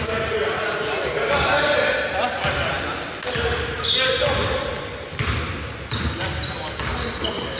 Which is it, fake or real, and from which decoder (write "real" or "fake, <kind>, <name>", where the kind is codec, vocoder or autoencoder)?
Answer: real